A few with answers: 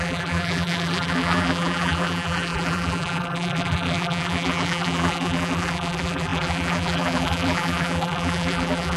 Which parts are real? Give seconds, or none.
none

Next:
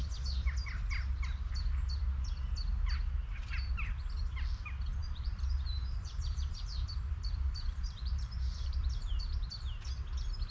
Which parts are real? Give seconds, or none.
0.0-5.0; 9.2-10.5